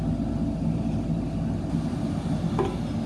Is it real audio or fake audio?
real